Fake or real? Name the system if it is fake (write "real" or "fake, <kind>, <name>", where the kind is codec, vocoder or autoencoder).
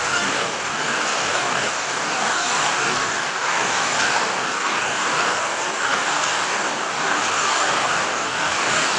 fake, codec, DAC